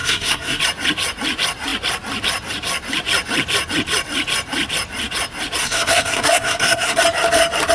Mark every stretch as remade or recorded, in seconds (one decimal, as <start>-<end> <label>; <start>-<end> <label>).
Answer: 0.0-0.6 remade; 0.6-5.6 recorded; 5.6-7.0 remade; 7.0-7.7 recorded